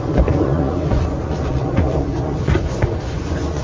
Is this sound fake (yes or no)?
yes